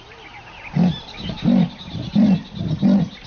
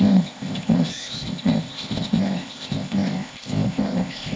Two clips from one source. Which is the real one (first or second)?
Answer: first